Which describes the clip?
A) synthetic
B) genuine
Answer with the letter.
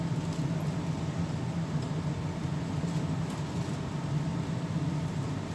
B